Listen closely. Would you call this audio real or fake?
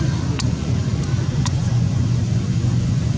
fake